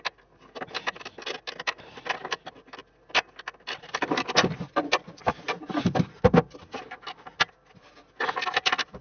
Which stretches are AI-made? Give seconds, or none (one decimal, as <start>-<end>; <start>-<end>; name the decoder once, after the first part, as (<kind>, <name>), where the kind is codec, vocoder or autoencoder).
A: none